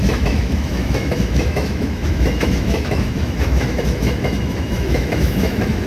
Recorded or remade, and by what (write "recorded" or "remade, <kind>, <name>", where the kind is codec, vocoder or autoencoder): remade, autoencoder, DAC-VAE